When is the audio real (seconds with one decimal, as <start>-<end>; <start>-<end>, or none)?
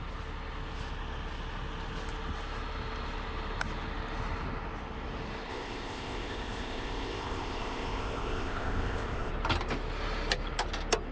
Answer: 0.0-5.5; 9.3-11.1